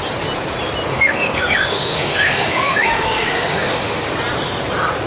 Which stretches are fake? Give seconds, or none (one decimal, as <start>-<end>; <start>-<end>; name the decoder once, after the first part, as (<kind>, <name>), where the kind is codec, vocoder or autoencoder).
0.9-4.0 (autoencoder, DAC-VAE)